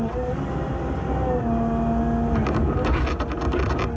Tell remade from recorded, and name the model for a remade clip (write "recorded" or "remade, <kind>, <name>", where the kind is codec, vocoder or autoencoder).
recorded